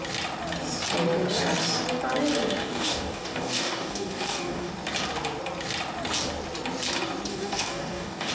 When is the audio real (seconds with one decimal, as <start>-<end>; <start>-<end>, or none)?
0.0-2.6; 4.7-7.3